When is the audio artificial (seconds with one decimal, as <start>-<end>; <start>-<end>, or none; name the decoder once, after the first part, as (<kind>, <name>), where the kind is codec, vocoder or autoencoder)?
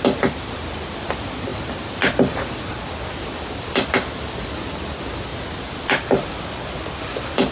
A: none